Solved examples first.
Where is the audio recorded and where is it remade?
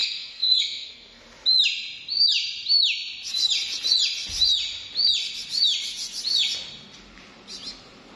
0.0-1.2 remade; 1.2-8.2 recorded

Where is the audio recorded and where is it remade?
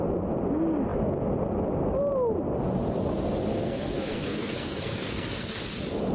0.0-3.5 recorded; 3.5-5.6 remade; 5.6-6.1 recorded